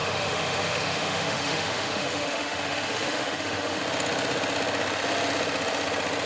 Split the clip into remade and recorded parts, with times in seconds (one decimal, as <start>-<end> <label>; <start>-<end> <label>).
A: 0.0-3.8 remade; 3.8-6.3 recorded